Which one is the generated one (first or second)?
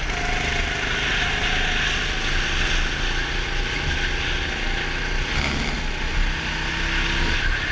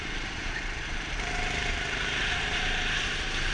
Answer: second